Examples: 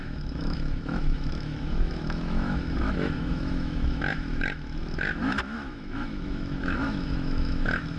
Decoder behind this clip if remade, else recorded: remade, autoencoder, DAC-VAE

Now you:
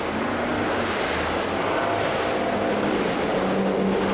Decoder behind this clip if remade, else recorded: recorded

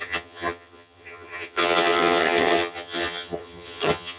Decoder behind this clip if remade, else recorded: remade, vocoder, HiFi-GAN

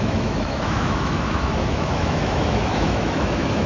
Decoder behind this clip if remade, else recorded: remade, autoencoder, DAC-VAE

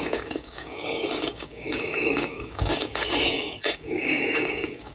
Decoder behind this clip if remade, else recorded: remade, codec, DAC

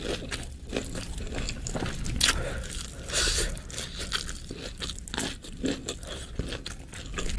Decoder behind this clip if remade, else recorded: recorded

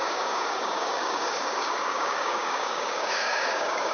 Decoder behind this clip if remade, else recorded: remade, codec, DAC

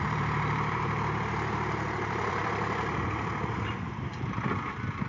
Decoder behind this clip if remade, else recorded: remade, vocoder, BigVGAN v2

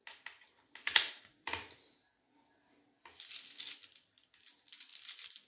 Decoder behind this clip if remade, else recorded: recorded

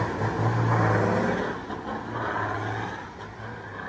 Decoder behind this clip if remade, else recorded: recorded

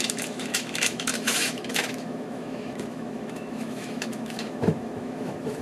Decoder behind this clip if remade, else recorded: remade, autoencoder, DAC-VAE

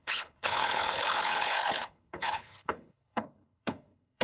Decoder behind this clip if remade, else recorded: remade, codec, HILCodec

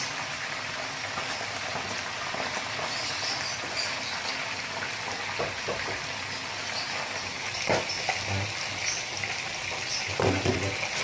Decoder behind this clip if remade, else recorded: recorded